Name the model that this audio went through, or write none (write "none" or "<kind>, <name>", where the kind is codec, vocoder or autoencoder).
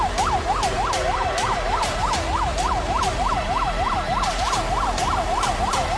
vocoder, BigVGAN v2